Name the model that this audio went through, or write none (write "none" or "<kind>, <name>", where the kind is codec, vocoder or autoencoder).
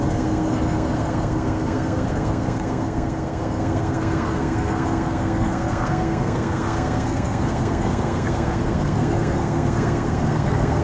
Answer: codec, SNAC